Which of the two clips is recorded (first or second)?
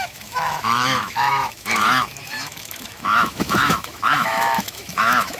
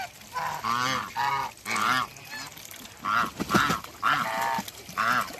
second